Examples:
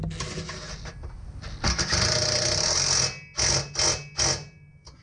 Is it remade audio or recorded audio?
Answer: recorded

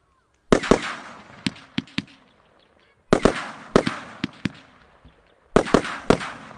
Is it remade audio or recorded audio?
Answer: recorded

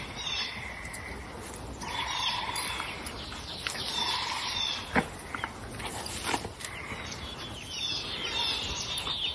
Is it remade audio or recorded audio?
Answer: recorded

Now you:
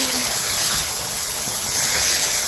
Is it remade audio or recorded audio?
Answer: remade